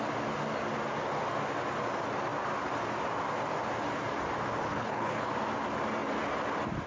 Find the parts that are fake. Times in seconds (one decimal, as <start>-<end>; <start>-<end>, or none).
4.7-5.3